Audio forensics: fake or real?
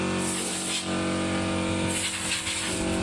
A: real